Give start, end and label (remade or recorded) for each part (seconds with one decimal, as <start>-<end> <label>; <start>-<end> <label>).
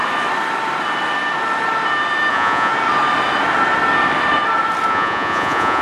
0.0-2.3 recorded; 2.3-2.7 remade; 2.7-4.9 recorded; 4.9-5.8 remade